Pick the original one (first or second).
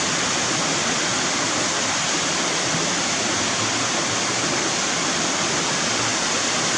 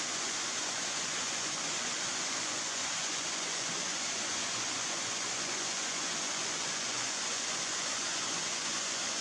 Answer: first